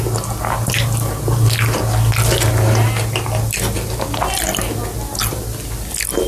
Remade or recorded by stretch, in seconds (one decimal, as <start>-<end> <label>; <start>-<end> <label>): 0.0-6.3 recorded

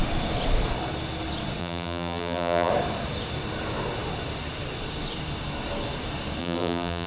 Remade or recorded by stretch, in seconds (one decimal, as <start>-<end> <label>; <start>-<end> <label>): 0.0-1.6 recorded; 1.6-2.7 remade; 2.7-6.4 recorded; 6.4-7.1 remade

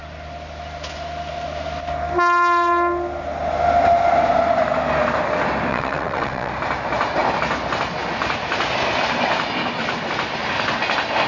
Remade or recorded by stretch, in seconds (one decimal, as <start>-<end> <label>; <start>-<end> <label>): 0.0-5.7 recorded; 5.7-6.5 remade; 6.5-11.3 recorded

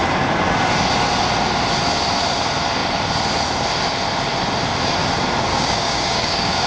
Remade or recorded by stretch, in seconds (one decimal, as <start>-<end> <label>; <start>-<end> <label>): 0.0-5.5 recorded; 5.5-6.7 remade

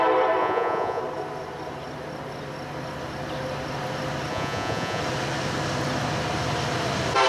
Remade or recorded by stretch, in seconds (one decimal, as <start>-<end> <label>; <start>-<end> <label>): 0.0-0.4 recorded; 0.4-1.0 remade; 1.0-4.3 recorded; 4.3-5.0 remade; 5.0-7.3 recorded

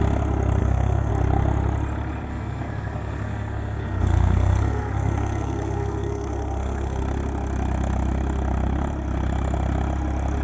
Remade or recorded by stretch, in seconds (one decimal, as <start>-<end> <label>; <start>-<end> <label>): 0.0-0.6 recorded; 0.6-1.1 remade; 1.1-2.3 recorded; 2.3-7.0 remade; 7.0-10.4 recorded

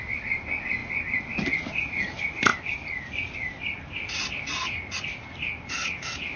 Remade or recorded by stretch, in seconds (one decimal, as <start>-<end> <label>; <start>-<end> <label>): 0.0-6.4 recorded